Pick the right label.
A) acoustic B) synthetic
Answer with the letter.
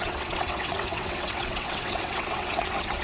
B